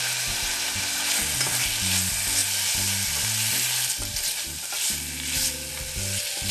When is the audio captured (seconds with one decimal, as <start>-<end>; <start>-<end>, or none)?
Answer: 0.0-6.5